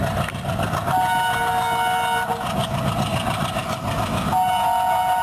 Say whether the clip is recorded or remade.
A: recorded